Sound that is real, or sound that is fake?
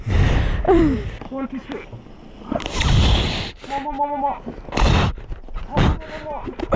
real